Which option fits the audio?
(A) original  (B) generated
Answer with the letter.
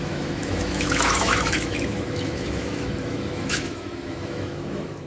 B